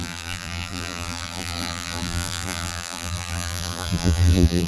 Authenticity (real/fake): fake